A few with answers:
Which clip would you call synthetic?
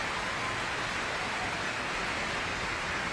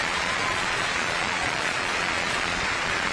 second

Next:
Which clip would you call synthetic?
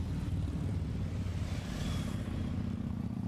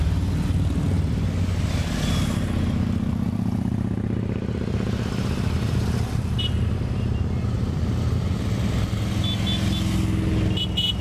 first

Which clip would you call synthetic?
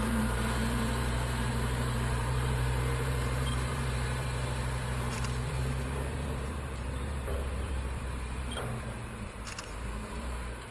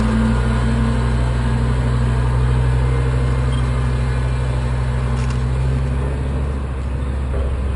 first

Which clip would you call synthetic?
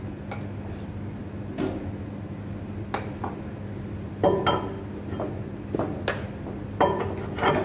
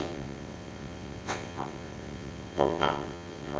second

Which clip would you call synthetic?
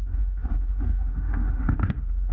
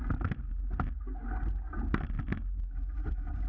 first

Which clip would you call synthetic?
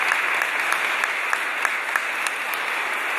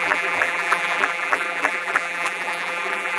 second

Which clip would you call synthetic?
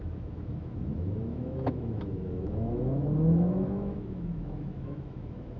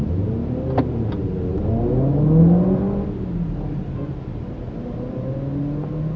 first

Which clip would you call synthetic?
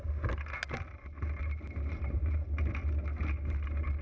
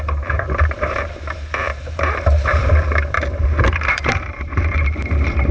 second